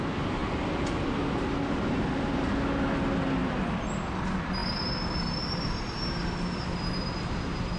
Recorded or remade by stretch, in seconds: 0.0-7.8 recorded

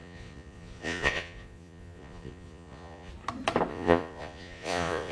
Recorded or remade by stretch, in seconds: 0.0-3.1 remade; 3.1-3.7 recorded; 3.7-5.1 remade

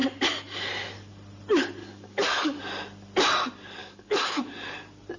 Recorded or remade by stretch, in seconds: 0.0-1.8 recorded; 1.8-2.6 remade; 2.6-3.8 recorded; 3.8-4.4 remade; 4.4-5.2 recorded